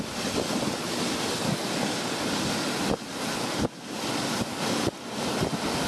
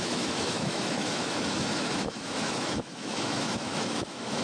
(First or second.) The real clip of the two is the first